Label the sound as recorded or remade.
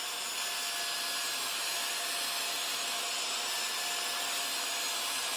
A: recorded